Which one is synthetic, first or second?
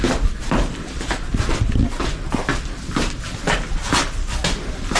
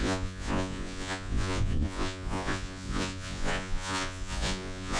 second